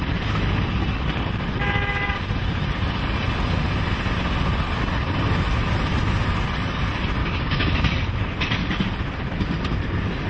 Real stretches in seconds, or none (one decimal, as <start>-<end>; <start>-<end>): 0.0-7.2; 7.7-10.3